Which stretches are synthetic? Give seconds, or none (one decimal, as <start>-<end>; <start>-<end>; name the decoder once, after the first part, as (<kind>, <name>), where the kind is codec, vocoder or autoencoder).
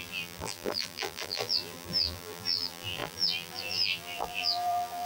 0.0-5.1 (vocoder, BigVGAN v2)